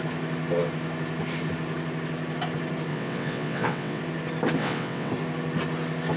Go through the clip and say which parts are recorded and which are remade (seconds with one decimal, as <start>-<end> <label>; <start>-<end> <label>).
0.0-2.9 recorded; 2.9-4.0 remade; 4.0-4.6 recorded; 4.6-5.1 remade; 5.1-6.2 recorded